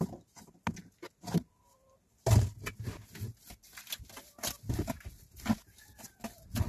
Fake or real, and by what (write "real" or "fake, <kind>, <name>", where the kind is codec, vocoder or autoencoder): real